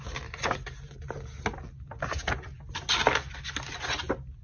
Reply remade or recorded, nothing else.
recorded